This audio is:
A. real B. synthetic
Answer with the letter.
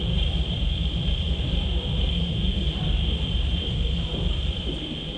B